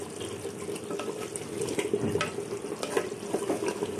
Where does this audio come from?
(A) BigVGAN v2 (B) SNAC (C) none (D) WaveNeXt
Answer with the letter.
C